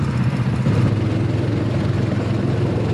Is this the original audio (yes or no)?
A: yes